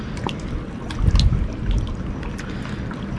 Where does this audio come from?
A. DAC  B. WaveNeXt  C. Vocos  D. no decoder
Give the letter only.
D